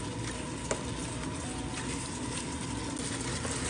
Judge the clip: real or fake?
real